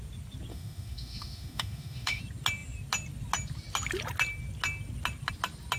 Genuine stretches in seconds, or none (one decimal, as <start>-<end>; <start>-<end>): 0.0-0.5; 2.2-5.8